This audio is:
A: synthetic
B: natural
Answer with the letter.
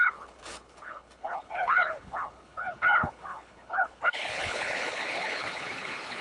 A